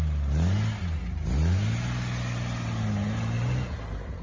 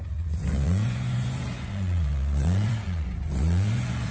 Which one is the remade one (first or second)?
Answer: second